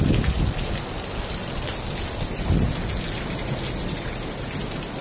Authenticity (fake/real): real